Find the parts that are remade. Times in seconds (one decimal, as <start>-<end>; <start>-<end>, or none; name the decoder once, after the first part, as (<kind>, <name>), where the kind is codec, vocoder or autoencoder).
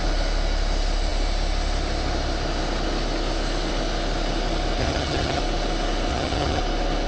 4.8-5.4 (vocoder, HiFi-GAN); 6.1-6.6